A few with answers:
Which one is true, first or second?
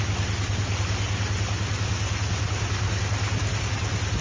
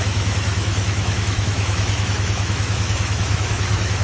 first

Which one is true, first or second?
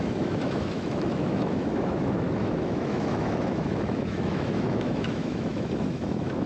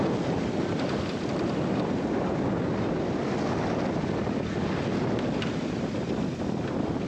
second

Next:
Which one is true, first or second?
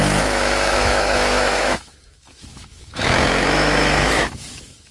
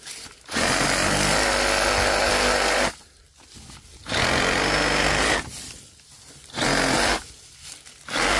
second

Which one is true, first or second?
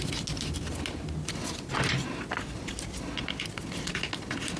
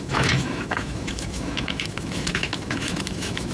first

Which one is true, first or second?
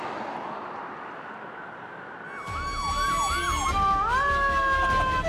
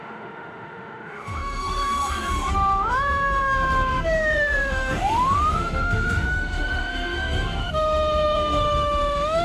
first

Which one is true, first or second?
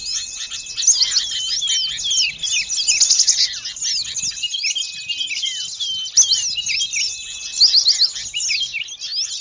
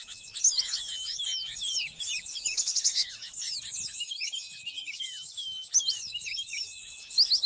first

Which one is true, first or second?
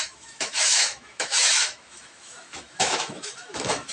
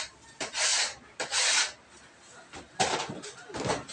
second